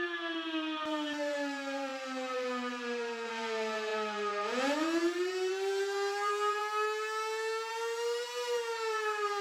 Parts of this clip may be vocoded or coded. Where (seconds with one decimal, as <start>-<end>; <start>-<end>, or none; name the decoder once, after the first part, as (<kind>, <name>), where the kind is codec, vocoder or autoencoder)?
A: 0.0-6.6 (vocoder, BigVGAN v2); 7.7-9.4